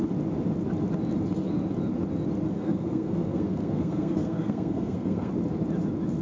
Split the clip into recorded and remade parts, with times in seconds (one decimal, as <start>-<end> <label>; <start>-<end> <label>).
0.0-2.5 recorded; 2.5-5.3 remade; 5.3-6.2 recorded